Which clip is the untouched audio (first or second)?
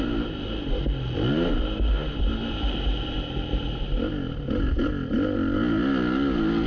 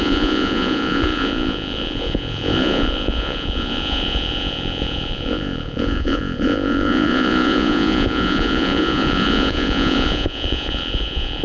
first